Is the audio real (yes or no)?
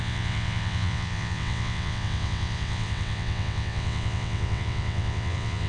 no